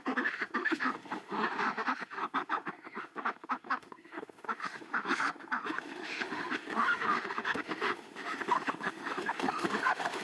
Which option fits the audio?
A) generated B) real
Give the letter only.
A